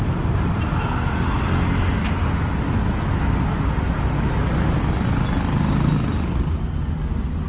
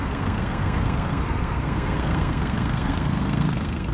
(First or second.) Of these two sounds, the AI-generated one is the second